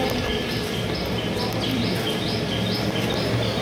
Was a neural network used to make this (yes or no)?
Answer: no